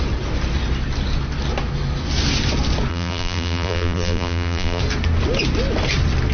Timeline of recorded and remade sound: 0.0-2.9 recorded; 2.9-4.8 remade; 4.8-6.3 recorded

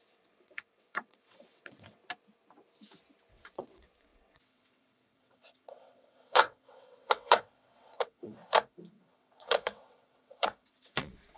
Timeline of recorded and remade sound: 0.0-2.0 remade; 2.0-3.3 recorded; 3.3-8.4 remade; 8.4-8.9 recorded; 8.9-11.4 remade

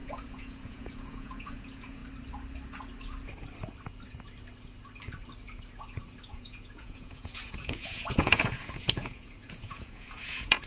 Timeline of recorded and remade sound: 0.0-2.0 remade; 2.0-6.2 recorded; 6.2-10.7 remade

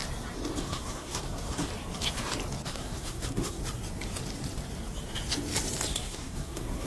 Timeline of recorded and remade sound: 0.0-0.6 recorded; 0.6-1.7 remade; 1.7-2.7 recorded; 2.7-3.6 remade; 3.6-5.9 recorded; 5.9-6.9 remade